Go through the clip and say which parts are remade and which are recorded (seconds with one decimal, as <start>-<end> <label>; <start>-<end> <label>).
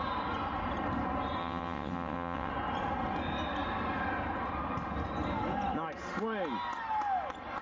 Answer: 0.0-1.4 recorded; 1.4-2.5 remade; 2.5-7.6 recorded